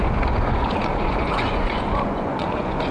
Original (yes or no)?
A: no